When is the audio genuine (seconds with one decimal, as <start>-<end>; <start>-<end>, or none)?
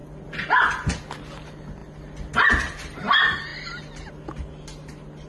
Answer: 0.0-5.3